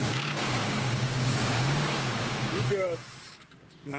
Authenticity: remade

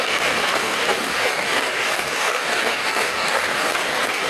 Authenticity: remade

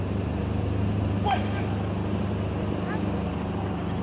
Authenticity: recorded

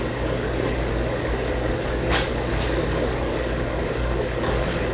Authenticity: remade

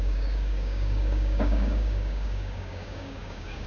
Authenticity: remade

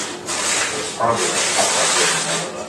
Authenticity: recorded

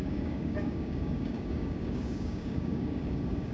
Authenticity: remade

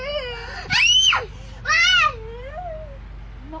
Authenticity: recorded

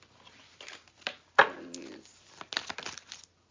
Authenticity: recorded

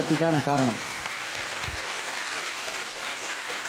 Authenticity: remade